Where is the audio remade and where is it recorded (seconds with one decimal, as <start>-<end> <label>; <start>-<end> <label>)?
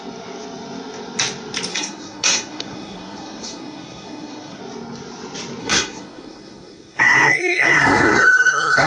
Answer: 0.0-1.7 recorded; 1.7-4.6 remade; 4.6-5.6 recorded; 5.6-8.9 remade